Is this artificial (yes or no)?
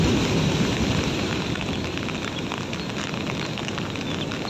yes